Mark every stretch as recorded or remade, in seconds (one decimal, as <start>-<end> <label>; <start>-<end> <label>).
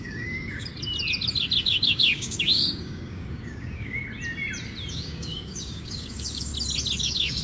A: 0.0-0.7 remade; 0.7-1.6 recorded; 1.6-4.0 remade; 4.0-4.9 recorded; 4.9-6.5 remade; 6.5-7.0 recorded; 7.0-7.4 remade